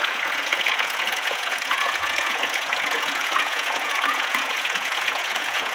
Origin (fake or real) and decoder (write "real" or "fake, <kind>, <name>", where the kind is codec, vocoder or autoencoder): fake, vocoder, Vocos